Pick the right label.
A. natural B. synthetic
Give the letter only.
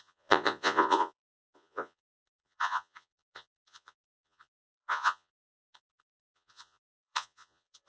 B